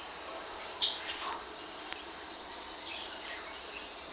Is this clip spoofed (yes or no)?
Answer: yes